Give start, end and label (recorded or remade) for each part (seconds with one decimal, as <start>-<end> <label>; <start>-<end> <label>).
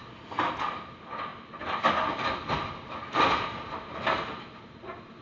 0.0-5.2 recorded